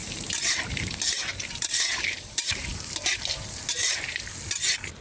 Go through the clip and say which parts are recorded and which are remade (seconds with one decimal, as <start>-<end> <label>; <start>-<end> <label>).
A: 0.0-0.9 remade; 0.9-1.3 recorded; 1.3-4.3 remade; 4.3-5.0 recorded